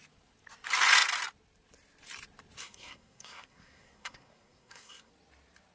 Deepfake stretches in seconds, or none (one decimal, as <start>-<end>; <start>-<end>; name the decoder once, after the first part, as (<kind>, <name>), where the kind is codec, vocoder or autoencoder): 2.6-5.1 (codec, SNAC)